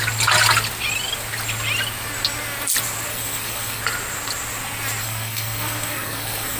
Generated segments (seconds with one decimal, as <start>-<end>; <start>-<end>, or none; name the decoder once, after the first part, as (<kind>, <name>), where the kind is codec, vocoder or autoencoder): 3.1-3.8 (codec, SNAC); 5.0-6.6